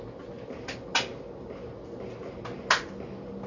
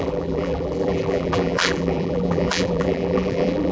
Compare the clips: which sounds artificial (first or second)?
second